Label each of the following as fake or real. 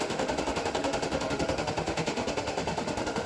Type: fake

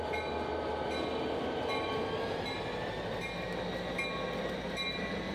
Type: real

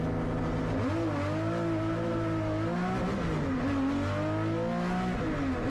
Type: real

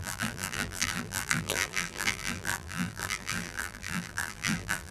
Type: fake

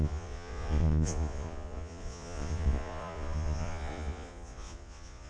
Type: fake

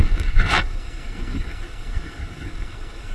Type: fake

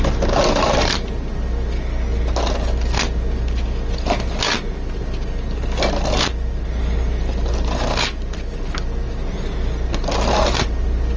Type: real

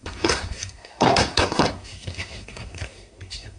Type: fake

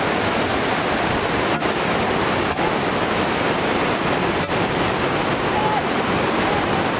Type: real